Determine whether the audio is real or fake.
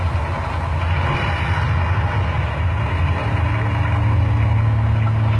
real